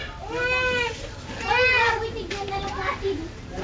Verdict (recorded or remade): recorded